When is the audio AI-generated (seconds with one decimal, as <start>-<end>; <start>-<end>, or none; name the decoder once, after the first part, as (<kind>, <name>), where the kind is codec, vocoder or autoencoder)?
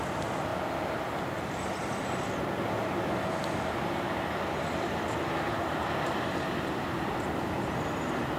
none